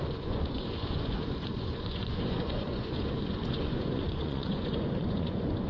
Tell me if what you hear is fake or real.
fake